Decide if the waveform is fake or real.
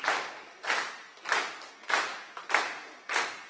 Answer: real